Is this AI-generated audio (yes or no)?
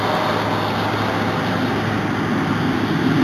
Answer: no